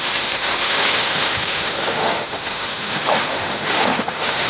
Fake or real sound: fake